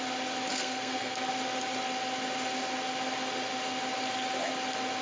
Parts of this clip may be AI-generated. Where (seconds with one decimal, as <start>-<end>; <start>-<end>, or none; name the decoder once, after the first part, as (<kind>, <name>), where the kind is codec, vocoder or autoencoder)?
0.5-1.3 (codec, SNAC)